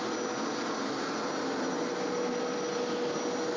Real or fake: real